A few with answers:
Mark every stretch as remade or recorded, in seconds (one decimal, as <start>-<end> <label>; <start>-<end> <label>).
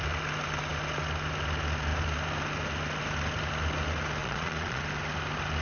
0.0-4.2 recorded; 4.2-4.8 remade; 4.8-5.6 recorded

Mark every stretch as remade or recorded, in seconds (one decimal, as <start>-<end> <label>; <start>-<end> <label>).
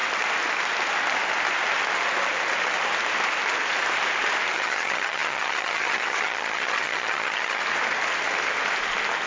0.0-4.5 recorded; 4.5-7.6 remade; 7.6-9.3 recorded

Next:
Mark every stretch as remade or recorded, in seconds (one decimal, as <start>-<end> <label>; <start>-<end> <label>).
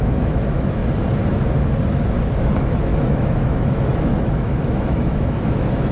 0.0-0.8 remade; 0.8-2.4 recorded; 2.4-5.9 remade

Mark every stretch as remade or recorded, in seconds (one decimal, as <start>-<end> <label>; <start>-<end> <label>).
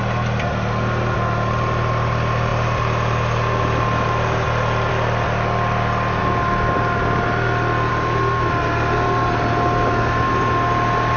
0.0-11.2 recorded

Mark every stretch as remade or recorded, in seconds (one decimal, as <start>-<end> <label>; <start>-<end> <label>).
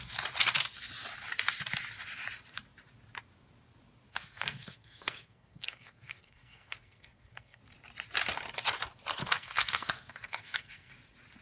0.0-4.1 recorded; 4.1-7.6 remade; 7.6-9.2 recorded; 9.2-10.9 remade; 10.9-11.4 recorded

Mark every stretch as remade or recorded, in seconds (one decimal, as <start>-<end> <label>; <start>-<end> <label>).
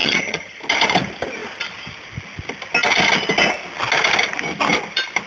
0.0-0.6 remade; 0.6-5.3 recorded